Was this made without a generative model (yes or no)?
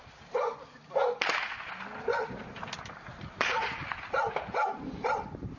yes